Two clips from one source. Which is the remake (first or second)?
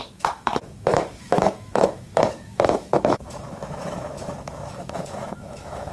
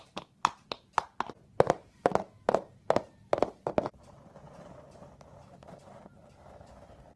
first